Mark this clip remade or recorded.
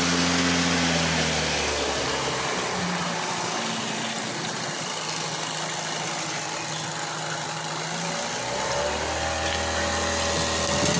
recorded